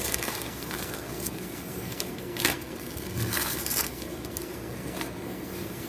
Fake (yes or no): yes